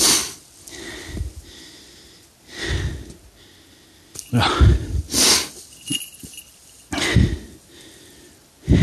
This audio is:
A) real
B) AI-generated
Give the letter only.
A